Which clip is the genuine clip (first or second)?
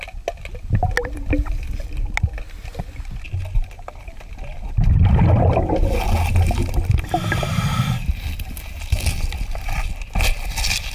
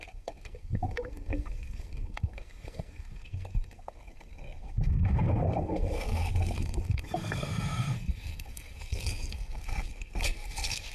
first